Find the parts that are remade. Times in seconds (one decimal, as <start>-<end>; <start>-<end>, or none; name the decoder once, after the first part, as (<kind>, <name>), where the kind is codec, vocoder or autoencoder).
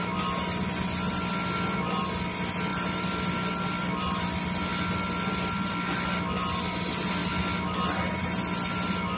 2.7-4.2 (vocoder, BigVGAN v2); 4.7-6.5